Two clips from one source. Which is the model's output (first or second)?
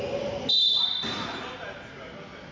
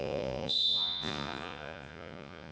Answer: second